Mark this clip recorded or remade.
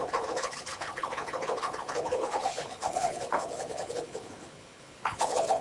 remade